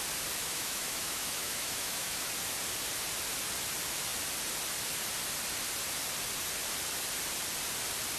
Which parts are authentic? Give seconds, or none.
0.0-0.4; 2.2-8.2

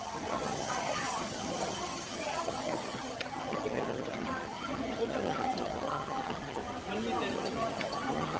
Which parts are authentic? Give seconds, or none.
6.6-7.3